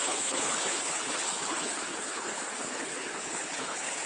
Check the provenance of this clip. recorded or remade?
remade